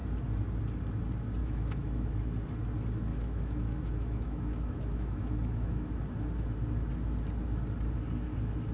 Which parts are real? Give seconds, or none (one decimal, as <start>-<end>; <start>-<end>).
0.0-1.4; 2.1-3.1; 5.9-8.7